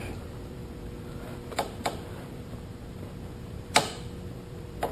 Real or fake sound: fake